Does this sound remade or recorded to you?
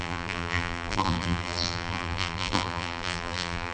remade